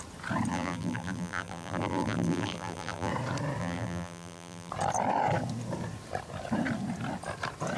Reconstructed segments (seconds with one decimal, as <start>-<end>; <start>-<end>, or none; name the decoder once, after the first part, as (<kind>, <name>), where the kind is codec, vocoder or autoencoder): 0.5-3.1 (vocoder, BigVGAN v2); 3.6-4.7